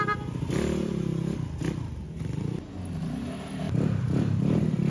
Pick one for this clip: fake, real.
real